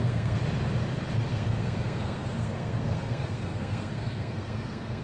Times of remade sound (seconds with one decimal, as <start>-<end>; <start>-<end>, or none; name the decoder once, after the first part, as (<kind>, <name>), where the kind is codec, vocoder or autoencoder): 0.0-0.4 (codec, SNAC); 1.3-5.0